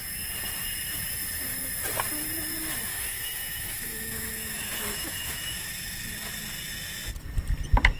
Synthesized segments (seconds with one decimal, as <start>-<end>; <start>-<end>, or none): 2.9-5.7